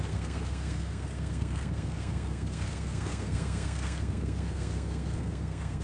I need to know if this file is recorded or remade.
remade